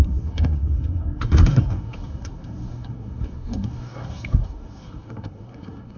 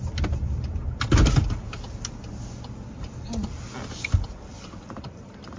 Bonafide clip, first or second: second